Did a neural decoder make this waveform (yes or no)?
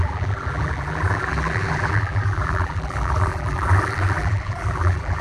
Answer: yes